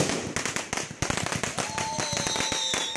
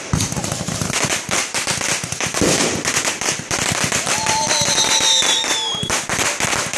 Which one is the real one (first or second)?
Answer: first